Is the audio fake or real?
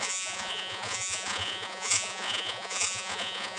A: fake